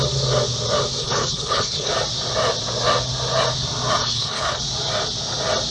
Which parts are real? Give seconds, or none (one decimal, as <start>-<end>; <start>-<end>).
0.0-1.0; 1.9-4.0; 4.6-5.7